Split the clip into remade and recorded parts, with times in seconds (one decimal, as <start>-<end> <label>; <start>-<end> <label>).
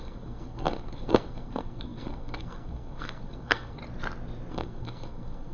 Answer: 0.0-3.8 remade; 3.8-4.5 recorded; 4.5-5.5 remade